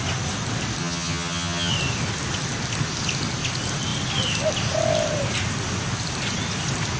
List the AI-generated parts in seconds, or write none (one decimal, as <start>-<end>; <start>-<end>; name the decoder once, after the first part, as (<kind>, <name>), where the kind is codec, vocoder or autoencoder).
0.8-1.7 (vocoder, HiFi-GAN)